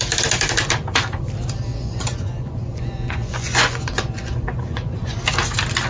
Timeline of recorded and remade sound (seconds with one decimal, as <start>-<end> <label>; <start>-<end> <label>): 0.0-1.7 recorded; 1.7-5.2 remade; 5.2-5.9 recorded